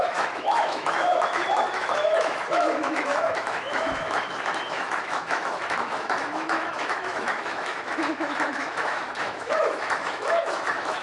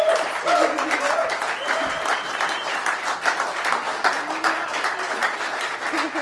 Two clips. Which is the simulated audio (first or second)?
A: first